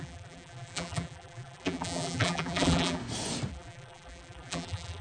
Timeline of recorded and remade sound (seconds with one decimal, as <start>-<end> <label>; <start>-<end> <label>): 0.0-3.0 remade; 3.0-3.5 recorded; 3.5-5.0 remade